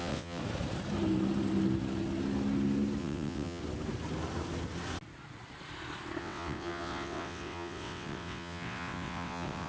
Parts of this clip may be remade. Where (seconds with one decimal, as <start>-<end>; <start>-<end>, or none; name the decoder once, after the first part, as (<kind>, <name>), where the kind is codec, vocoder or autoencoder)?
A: 0.0-0.4 (vocoder, WaveNeXt); 3.0-3.6; 6.2-9.7